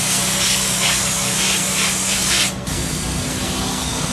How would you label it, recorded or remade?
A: remade